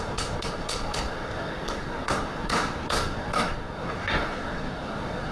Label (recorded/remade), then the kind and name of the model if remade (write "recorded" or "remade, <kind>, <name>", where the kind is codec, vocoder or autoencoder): remade, codec, SNAC